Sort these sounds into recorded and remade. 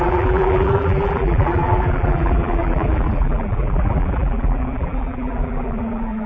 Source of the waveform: remade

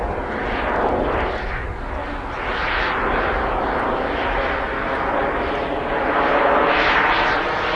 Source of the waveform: recorded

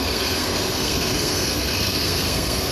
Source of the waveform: remade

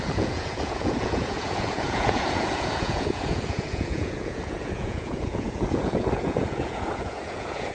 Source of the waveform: remade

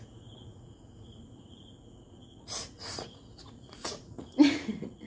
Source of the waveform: remade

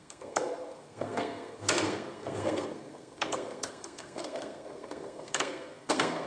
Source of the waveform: remade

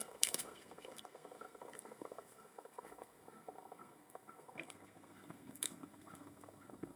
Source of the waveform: remade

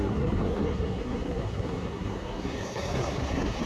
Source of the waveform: remade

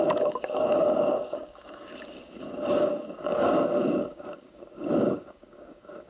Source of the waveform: remade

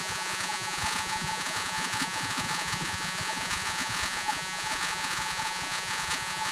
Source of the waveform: remade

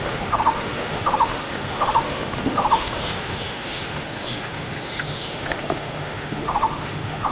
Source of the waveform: remade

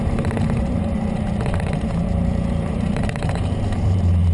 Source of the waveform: remade